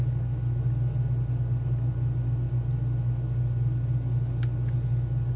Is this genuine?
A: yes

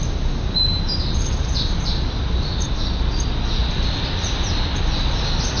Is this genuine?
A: yes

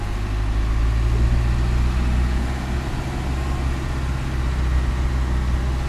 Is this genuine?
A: yes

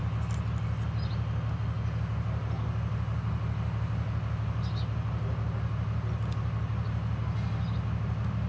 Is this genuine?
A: yes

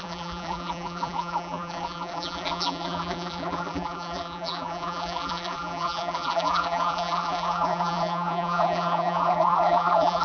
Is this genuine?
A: no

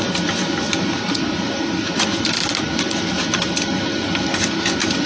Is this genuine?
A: no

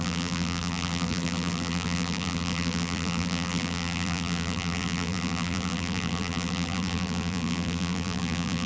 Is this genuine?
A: no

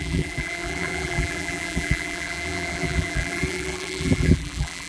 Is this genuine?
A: no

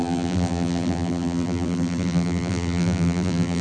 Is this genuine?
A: no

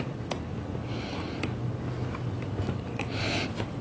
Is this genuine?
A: yes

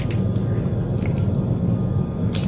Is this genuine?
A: yes